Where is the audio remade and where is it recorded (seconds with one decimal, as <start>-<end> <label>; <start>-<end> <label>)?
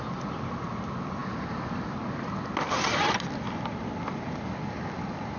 0.0-5.4 recorded